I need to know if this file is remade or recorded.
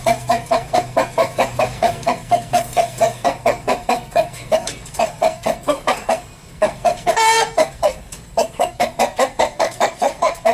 remade